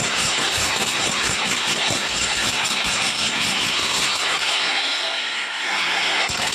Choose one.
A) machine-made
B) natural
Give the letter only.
A